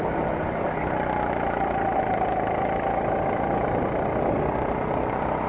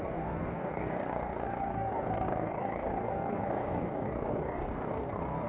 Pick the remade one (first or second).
second